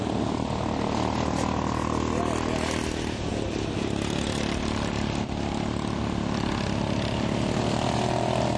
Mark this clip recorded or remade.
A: recorded